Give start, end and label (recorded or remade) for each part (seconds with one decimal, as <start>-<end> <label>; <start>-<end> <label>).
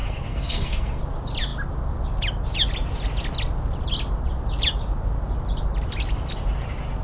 0.0-1.0 remade; 1.0-7.0 recorded